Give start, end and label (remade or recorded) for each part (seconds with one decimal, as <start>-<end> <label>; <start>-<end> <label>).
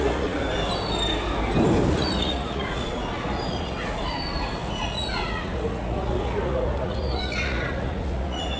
0.0-0.4 remade; 0.4-1.9 recorded; 1.9-8.6 remade